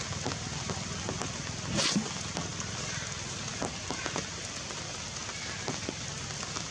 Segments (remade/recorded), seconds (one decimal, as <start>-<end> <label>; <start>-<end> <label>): 0.0-6.7 recorded